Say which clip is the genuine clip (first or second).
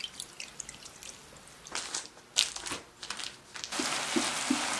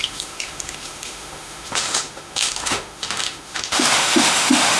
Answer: first